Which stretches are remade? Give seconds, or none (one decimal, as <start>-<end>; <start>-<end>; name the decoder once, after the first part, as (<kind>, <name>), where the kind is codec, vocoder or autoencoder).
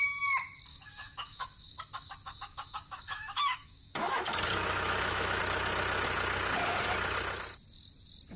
0.7-5.4 (autoencoder, DAC-VAE)